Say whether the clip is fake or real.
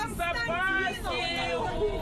fake